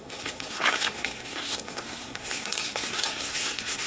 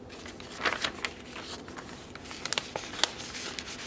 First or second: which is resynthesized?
first